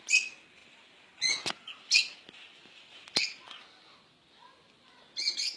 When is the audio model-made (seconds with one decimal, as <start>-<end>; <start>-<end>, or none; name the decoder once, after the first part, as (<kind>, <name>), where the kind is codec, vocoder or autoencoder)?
none